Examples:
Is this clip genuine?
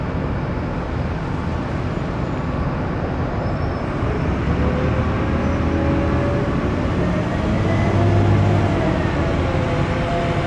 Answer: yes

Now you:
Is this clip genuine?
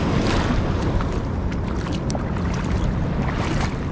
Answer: yes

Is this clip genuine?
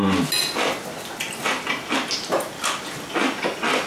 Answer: yes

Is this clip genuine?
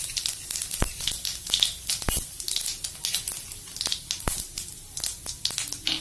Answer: yes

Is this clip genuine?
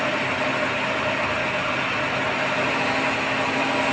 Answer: yes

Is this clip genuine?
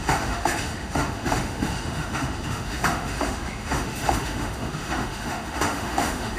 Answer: no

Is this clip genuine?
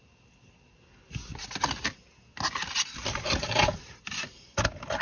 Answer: yes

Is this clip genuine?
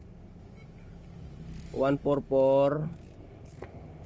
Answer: yes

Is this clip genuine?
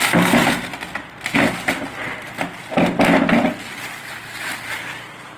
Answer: yes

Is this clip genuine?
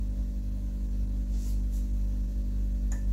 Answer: yes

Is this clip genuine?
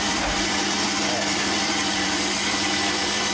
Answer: no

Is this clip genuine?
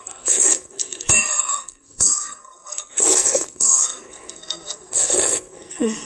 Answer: no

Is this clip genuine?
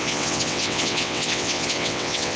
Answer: no